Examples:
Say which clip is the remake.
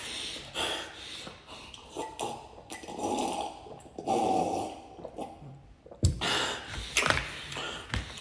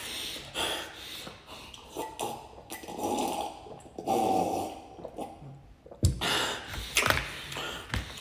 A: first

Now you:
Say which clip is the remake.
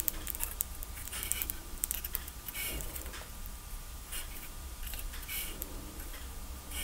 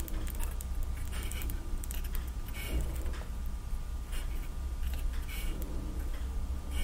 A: first